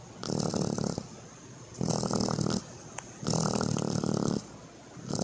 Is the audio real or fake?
real